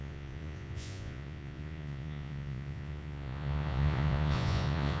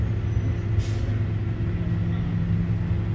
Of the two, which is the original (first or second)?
second